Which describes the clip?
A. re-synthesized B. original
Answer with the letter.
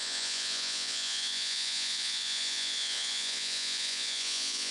A